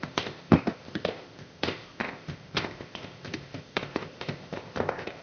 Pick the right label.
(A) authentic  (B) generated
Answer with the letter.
B